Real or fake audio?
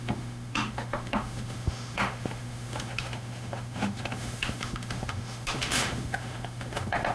fake